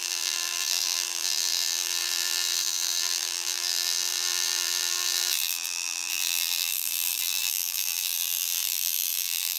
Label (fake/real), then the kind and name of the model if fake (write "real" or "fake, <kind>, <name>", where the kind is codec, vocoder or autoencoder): fake, vocoder, BigVGAN v2